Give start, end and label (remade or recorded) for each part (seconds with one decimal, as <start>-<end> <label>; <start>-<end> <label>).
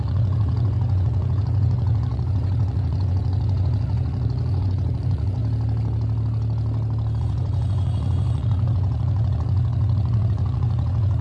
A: 0.0-5.4 remade; 5.4-7.2 recorded; 7.2-11.2 remade